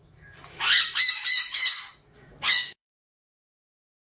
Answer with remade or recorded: remade